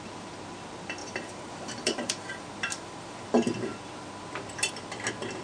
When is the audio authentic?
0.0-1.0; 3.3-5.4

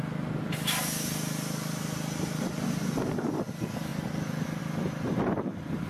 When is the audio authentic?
0.0-5.9

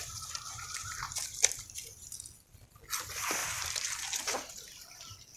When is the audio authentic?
0.0-0.8; 2.8-3.4; 4.5-5.4

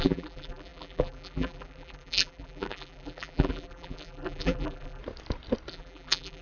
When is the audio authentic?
5.0-5.7

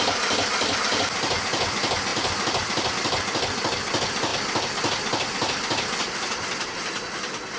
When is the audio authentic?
0.0-7.6

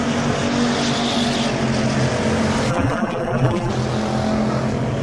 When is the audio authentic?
0.0-2.7; 3.7-5.0

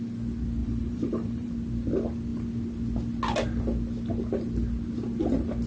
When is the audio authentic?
0.0-0.6; 1.5-5.7